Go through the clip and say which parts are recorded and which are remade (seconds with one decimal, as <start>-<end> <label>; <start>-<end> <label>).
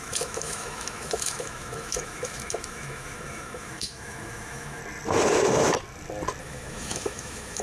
0.0-4.8 remade; 4.8-6.4 recorded; 6.4-7.6 remade